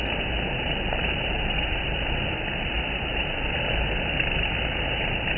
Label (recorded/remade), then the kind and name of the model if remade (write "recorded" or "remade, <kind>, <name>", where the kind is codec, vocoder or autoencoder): recorded